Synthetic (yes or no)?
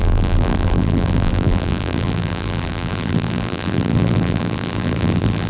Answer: yes